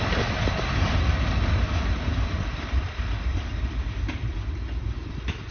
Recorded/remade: recorded